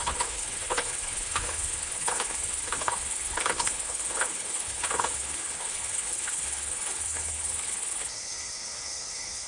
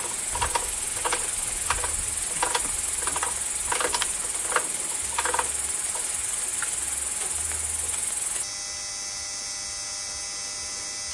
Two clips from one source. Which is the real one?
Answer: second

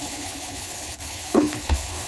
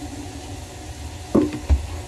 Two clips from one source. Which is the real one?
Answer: second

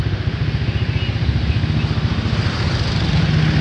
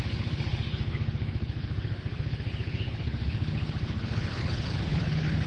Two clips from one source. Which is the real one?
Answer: first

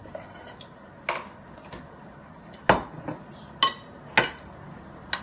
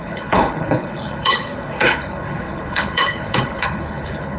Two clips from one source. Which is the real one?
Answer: first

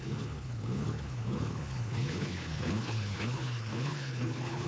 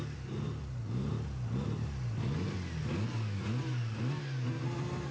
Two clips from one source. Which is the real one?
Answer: second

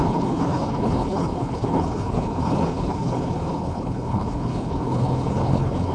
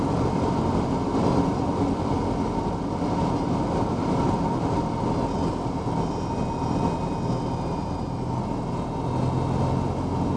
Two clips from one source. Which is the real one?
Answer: second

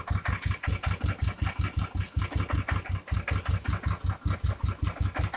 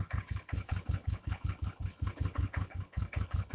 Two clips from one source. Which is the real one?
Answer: first